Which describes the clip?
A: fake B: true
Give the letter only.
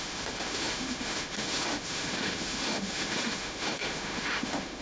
A